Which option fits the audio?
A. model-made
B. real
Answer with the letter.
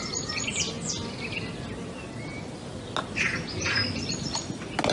B